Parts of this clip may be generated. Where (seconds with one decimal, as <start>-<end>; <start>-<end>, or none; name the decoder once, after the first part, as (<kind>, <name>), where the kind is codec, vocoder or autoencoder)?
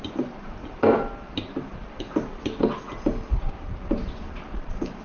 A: 0.0-0.6 (vocoder, BigVGAN v2); 3.0-5.0